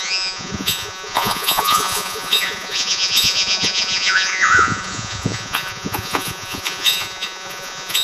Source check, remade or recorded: remade